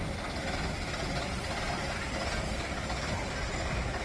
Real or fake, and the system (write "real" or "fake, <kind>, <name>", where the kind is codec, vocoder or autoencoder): real